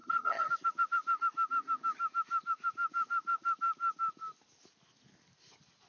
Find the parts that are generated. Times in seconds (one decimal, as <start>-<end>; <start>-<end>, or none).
0.0-0.5